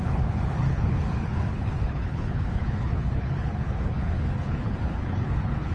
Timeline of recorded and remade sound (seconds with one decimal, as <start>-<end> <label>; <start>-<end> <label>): 0.0-5.7 remade